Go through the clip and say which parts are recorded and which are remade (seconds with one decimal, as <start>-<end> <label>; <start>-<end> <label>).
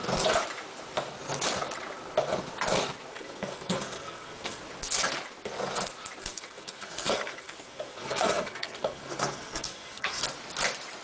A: 0.0-3.1 recorded; 3.1-4.6 remade; 4.6-6.2 recorded; 6.2-10.2 remade; 10.2-11.0 recorded